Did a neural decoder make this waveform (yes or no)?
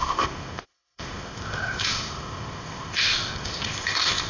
yes